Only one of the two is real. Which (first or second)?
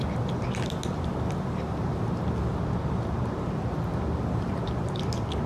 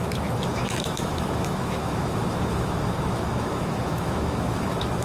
first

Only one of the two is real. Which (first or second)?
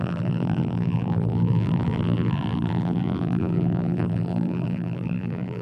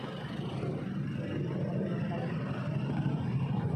second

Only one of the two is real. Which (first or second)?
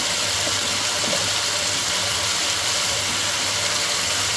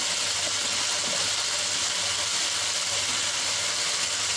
second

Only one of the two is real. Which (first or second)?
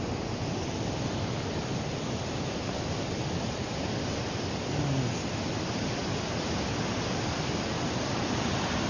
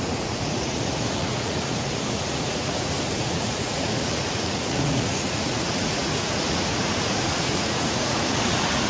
first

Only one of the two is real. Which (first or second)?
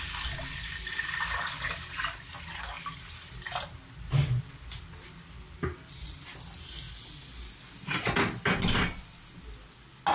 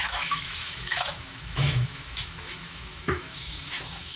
first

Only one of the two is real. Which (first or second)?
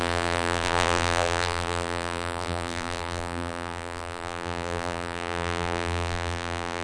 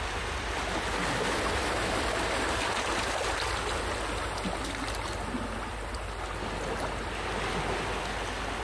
second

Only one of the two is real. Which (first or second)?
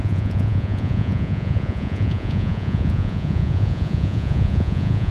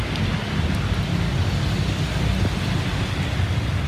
second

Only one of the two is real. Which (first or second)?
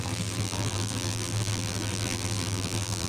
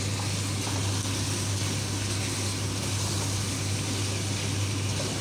second